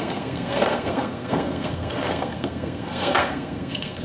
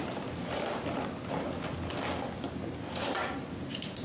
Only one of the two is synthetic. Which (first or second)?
first